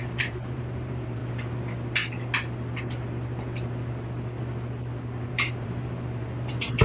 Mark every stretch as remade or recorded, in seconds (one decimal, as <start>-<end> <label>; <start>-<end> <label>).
0.0-1.2 remade; 1.2-5.3 recorded; 5.3-6.8 remade